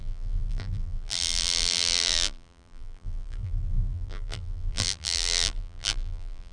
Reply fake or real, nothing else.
fake